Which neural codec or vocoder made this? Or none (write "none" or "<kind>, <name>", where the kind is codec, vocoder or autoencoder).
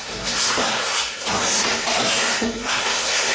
codec, SNAC